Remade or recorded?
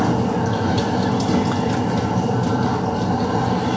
recorded